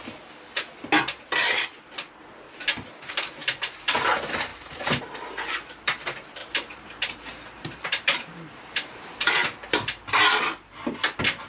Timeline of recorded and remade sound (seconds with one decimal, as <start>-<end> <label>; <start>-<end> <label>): 0.0-6.4 recorded; 6.4-9.3 remade; 9.3-11.5 recorded